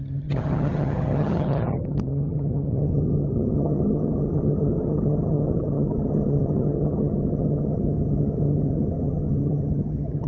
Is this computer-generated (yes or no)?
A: yes